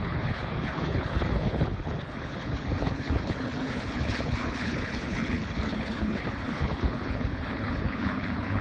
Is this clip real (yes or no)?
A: no